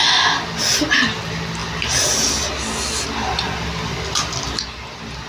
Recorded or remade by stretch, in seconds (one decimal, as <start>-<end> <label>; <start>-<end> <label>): 0.0-5.3 recorded